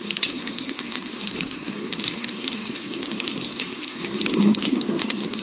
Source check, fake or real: fake